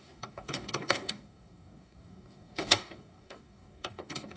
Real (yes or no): no